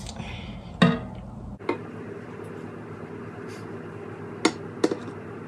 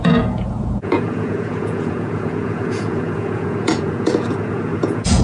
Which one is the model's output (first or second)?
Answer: second